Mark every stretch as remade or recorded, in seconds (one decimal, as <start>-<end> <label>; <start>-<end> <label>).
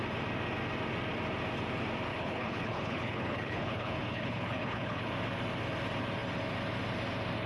0.0-2.1 recorded; 2.1-5.1 remade; 5.1-7.5 recorded